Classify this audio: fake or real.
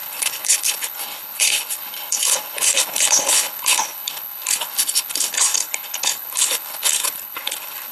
fake